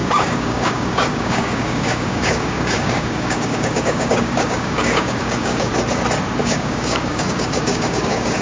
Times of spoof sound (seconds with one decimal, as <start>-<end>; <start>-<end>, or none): 0.0-5.7; 6.4-8.4